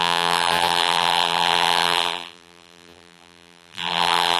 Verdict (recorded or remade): remade